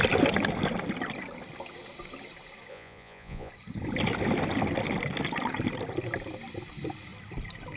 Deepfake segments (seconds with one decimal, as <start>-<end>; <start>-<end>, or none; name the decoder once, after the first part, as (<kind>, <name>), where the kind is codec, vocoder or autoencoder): 2.7-3.5 (vocoder, Vocos)